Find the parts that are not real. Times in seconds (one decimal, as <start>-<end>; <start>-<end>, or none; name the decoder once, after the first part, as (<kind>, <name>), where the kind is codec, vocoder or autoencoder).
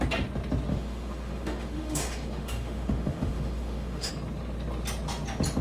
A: 0.7-4.1 (autoencoder, DAC-VAE)